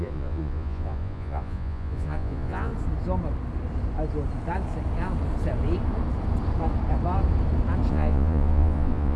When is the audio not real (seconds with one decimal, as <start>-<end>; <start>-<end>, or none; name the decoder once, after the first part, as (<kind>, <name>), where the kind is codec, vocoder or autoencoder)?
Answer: 0.0-2.7 (vocoder, Vocos); 7.9-9.2

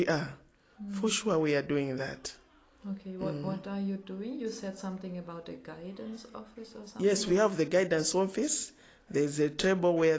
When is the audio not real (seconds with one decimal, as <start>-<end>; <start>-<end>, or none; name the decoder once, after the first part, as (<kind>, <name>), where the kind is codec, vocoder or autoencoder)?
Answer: none